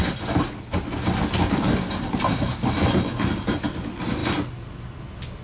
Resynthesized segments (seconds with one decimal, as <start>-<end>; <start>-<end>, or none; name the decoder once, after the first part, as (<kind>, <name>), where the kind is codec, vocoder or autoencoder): none